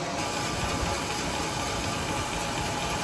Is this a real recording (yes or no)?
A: yes